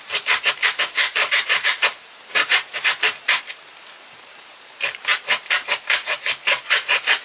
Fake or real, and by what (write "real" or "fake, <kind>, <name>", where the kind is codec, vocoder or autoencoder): fake, vocoder, BigVGAN v2